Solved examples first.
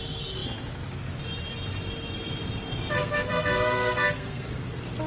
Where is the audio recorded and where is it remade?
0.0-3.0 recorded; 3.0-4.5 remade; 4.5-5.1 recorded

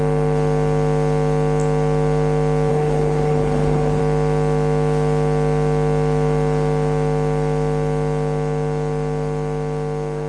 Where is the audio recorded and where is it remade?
0.0-2.7 recorded; 2.7-4.0 remade; 4.0-10.3 recorded